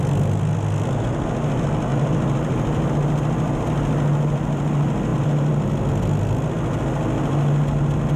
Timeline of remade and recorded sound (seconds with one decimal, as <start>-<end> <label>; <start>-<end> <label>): 0.0-1.9 recorded; 1.9-2.9 remade; 2.9-5.1 recorded; 5.1-5.9 remade; 5.9-8.2 recorded